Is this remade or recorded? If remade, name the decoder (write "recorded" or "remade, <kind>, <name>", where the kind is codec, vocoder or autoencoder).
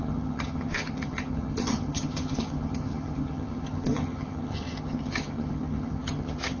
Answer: remade, vocoder, HiFi-GAN